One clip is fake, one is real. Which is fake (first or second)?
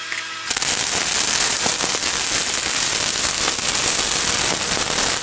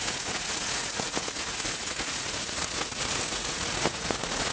second